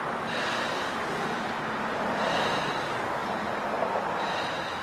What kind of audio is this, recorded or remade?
remade